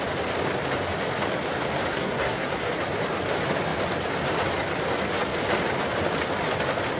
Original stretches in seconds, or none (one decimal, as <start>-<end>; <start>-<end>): 0.0-1.9; 2.7-7.0